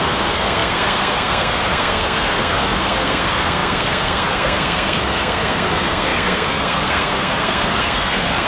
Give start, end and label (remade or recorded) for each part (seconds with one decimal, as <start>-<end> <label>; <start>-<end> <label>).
0.0-8.5 remade